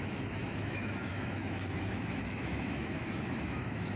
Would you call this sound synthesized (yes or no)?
yes